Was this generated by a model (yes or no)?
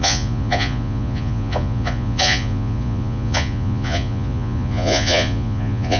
yes